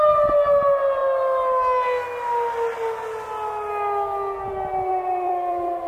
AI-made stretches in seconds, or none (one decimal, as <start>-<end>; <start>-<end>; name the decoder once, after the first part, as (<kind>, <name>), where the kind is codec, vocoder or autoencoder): 4.9-5.9 (vocoder, BigVGAN v2)